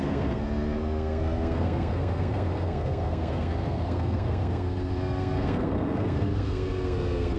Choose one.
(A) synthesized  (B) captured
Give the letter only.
A